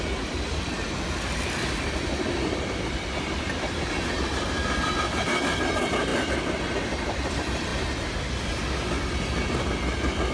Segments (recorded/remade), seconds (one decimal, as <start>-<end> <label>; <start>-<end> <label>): 0.0-10.3 recorded

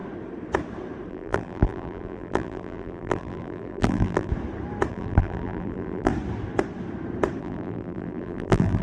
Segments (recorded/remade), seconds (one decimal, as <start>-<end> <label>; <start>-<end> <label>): 0.0-1.1 recorded; 1.1-4.3 remade; 4.3-4.9 recorded; 4.9-6.1 remade; 6.1-7.4 recorded; 7.4-8.8 remade

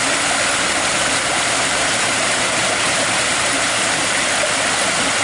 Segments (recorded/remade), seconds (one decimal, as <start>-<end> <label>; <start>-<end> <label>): 0.0-1.1 recorded; 1.1-4.2 remade; 4.2-5.2 recorded

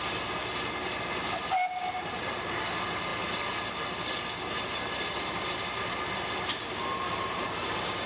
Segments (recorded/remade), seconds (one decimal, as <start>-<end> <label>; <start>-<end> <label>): 0.0-7.4 recorded; 7.4-8.1 remade

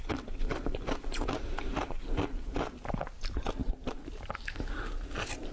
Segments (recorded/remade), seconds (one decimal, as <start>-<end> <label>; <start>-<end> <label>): 0.0-1.4 recorded; 1.4-2.5 remade; 2.5-3.6 recorded; 3.6-4.5 remade; 4.5-5.5 recorded

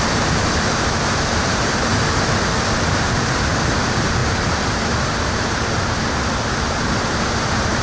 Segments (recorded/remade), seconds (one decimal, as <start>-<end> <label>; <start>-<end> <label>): 0.0-1.9 remade; 1.9-2.9 recorded; 2.9-7.8 remade

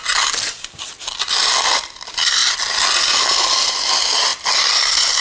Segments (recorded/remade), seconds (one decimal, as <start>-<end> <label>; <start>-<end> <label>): 0.0-5.2 recorded

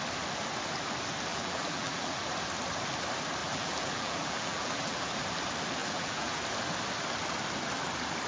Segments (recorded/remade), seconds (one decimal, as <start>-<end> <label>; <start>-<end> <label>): 0.0-1.3 recorded; 1.3-2.1 remade; 2.1-3.4 recorded; 3.4-5.1 remade; 5.1-5.8 recorded; 5.8-6.4 remade; 6.4-8.3 recorded